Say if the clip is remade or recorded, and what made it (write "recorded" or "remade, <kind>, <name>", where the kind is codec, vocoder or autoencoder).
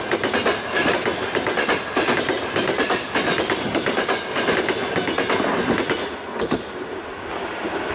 recorded